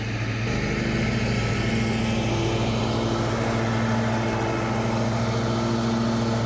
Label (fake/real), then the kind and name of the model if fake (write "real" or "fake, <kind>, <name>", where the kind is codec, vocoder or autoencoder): real